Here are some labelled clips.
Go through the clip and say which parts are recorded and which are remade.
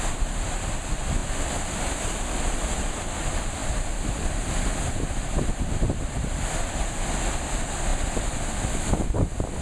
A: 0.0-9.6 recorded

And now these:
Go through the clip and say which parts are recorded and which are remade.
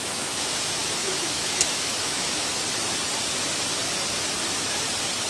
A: 0.0-2.5 remade; 2.5-5.3 recorded